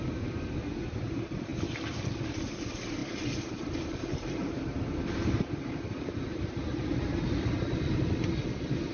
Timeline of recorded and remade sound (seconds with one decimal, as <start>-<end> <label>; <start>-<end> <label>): 0.0-3.0 recorded; 3.0-7.4 remade; 7.4-8.9 recorded